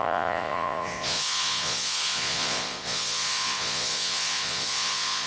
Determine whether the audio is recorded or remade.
remade